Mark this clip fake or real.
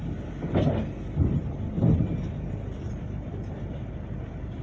real